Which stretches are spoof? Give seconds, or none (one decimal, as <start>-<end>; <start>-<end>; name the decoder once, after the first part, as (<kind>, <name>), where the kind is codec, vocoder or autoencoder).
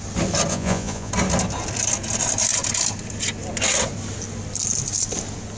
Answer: 0.5-1.1 (vocoder, Vocos)